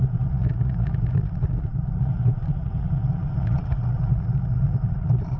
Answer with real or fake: fake